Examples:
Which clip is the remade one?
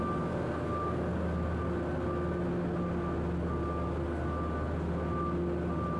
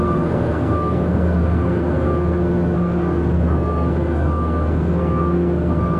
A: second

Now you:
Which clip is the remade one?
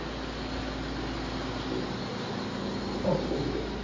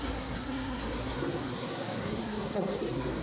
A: second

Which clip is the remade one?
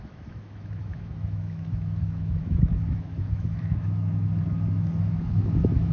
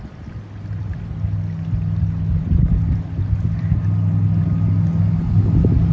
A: first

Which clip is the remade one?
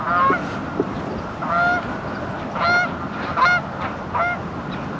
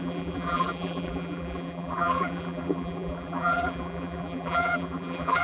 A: second